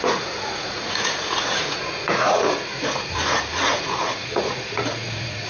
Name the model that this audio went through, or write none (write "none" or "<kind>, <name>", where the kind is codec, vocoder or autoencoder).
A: vocoder, Vocos